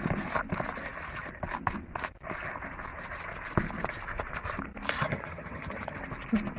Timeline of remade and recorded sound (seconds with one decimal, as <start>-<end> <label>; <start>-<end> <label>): 0.0-5.0 recorded; 5.0-6.0 remade; 6.0-6.6 recorded